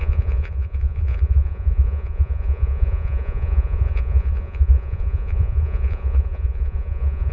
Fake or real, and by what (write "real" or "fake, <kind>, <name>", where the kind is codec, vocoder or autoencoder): fake, vocoder, Vocos